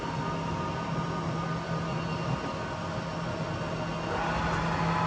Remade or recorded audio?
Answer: recorded